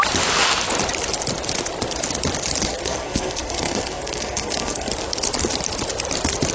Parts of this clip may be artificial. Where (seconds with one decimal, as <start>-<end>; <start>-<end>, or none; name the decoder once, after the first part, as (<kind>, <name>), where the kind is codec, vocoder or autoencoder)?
2.7-4.9 (codec, SNAC)